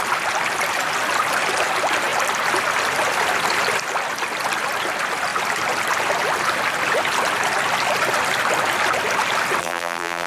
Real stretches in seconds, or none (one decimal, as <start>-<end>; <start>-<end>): 0.0-9.6